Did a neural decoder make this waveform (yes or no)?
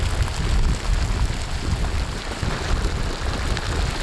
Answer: no